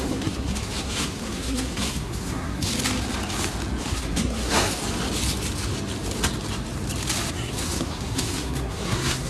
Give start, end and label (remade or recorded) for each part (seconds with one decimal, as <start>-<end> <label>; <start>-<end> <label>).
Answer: 0.0-2.7 remade; 2.7-3.8 recorded; 3.8-4.8 remade; 4.8-7.3 recorded; 7.3-9.3 remade